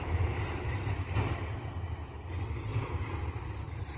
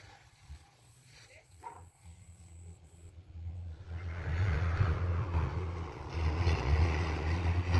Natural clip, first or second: first